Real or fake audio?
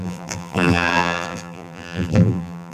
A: fake